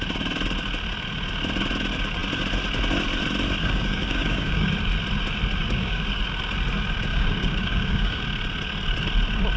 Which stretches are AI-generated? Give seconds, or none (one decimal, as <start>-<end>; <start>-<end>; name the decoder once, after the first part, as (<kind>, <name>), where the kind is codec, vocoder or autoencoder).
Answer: 3.6-4.7 (codec, DAC); 5.6-6.2; 7.1-8.2

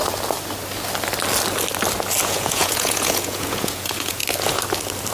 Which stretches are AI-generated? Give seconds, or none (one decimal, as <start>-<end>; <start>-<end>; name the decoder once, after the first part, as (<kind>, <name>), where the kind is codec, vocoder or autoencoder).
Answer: 2.2-4.2 (vocoder, Vocos)

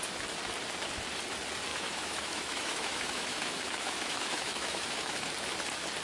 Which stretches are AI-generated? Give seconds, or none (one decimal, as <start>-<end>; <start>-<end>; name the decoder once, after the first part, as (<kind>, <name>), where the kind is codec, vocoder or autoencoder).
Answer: 1.7-5.3 (autoencoder, DAC-VAE)